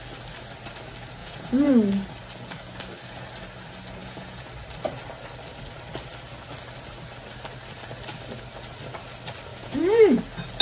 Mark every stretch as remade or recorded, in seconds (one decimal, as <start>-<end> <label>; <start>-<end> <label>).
0.0-1.2 recorded; 1.2-1.7 remade; 1.7-4.0 recorded; 4.0-4.5 remade; 4.5-9.5 recorded; 9.5-10.2 remade; 10.2-10.6 recorded